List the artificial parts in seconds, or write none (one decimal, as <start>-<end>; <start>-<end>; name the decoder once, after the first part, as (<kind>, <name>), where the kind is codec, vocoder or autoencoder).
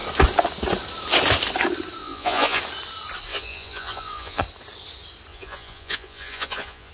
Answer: 2.0-2.6 (vocoder, Vocos); 3.3-4.4; 5.3-6.9